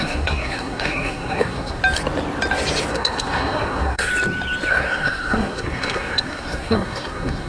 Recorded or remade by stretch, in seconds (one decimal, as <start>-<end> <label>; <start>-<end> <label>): 0.0-1.8 remade; 1.8-2.9 recorded; 2.9-4.1 remade; 4.1-4.7 recorded; 4.7-7.5 remade